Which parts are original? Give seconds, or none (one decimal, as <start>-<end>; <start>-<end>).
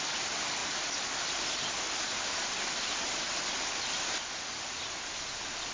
0.0-5.7